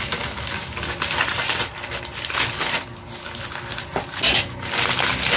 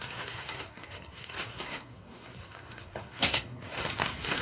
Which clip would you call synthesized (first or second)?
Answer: second